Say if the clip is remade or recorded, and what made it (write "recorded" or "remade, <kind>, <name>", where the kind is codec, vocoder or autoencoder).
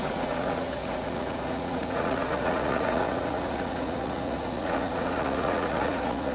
remade, vocoder, Vocos